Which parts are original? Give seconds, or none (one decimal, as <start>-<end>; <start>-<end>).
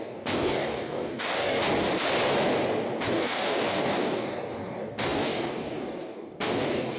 1.6-3.0